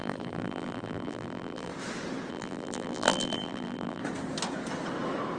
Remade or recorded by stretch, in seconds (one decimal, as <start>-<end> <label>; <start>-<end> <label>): 0.0-1.7 remade; 1.7-2.3 recorded; 2.3-4.0 remade; 4.0-5.4 recorded